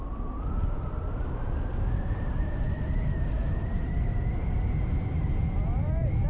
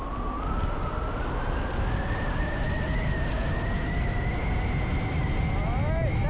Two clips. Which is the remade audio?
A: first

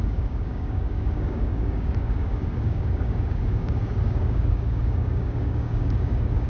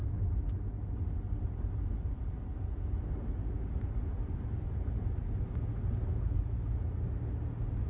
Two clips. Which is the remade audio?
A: first